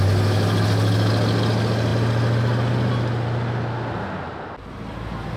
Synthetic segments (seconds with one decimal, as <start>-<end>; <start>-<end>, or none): none